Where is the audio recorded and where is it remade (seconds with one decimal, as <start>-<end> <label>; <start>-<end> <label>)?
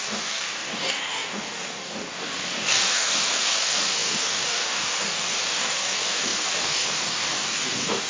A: 0.0-8.1 remade